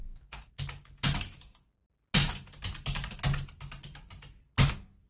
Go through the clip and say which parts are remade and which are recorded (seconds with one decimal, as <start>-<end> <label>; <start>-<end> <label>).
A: 0.0-0.5 remade; 0.5-5.1 recorded